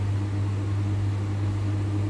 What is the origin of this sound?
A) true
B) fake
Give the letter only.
A